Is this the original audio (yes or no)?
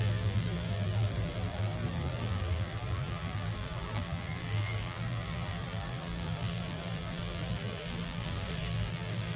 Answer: no